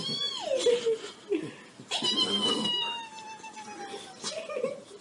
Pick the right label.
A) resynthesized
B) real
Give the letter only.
B